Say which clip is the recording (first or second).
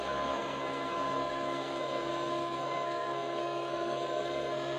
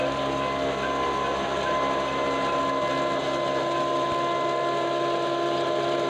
second